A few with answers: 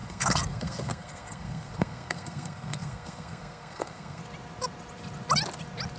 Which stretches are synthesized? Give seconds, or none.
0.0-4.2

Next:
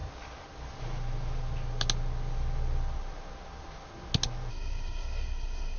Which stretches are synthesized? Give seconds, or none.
4.5-5.8

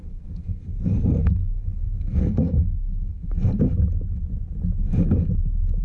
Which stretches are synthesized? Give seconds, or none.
0.0-3.5